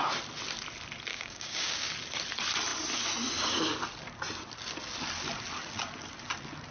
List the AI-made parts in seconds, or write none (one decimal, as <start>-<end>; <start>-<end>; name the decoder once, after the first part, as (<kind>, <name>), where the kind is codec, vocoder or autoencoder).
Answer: 1.1-1.9 (codec, DAC)